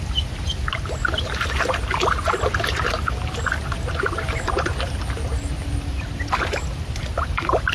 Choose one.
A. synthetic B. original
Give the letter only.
B